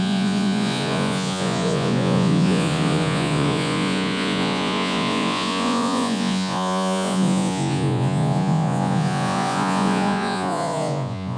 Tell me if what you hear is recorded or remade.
remade